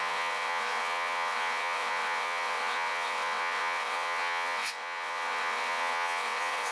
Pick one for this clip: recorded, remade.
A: remade